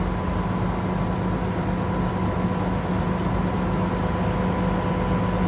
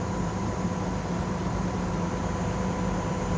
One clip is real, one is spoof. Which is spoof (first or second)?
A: second